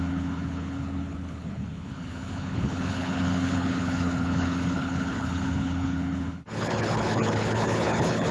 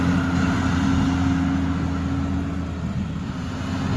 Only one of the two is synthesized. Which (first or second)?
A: first